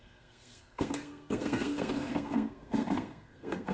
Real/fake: fake